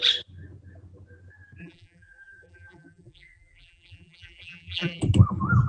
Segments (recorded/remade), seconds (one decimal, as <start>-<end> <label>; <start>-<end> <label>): 0.0-1.6 recorded; 1.6-5.0 remade; 5.0-5.7 recorded